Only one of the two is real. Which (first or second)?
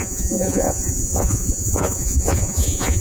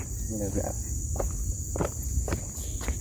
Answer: second